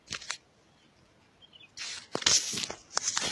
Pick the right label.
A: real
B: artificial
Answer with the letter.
A